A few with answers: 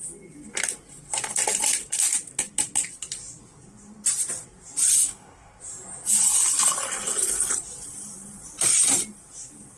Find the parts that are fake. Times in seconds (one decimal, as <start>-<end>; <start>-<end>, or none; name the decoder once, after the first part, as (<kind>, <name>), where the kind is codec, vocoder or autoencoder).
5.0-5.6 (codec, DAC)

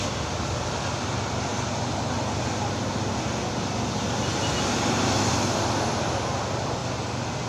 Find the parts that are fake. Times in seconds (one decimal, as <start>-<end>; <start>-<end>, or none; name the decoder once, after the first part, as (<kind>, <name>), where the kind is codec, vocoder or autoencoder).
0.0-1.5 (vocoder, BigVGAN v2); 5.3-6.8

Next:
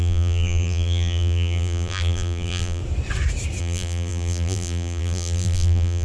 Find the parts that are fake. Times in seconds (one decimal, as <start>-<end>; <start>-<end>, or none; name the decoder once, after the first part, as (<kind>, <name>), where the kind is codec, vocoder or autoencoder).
0.0-2.8 (vocoder, BigVGAN v2); 3.6-6.0

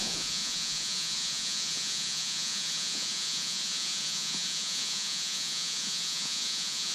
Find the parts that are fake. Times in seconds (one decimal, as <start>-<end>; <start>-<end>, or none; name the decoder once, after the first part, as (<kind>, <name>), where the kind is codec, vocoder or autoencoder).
0.0-6.9 (vocoder, Vocos)

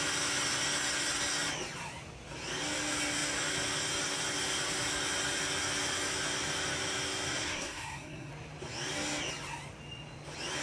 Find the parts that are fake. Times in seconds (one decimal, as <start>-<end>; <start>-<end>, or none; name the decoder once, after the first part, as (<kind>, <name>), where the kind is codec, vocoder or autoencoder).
7.3-8.3 (codec, SNAC)

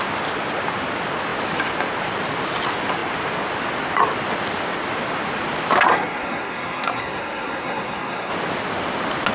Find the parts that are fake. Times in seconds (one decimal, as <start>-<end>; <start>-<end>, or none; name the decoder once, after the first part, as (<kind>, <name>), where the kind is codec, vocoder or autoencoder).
5.9-8.3 (codec, SNAC)

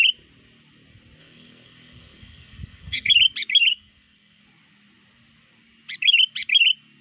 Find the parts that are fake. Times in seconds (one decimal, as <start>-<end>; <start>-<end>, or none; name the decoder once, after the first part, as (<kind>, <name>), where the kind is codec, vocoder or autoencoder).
1.2-3.1 (codec, SNAC); 3.7-4.4